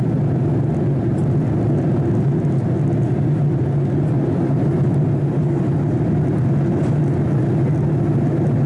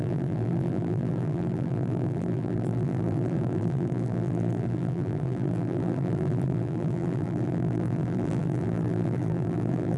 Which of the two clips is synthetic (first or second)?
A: second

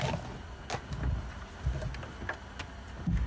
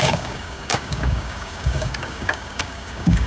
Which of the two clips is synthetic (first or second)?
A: second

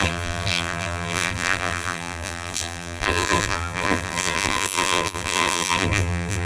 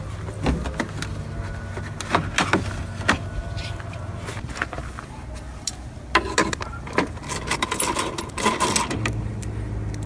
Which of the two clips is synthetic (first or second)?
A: first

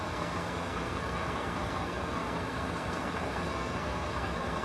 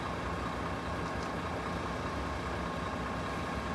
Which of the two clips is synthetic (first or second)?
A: first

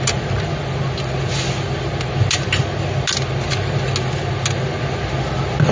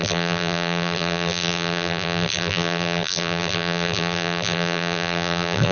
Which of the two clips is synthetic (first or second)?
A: second